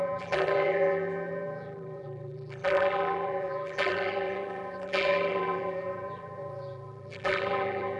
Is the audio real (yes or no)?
no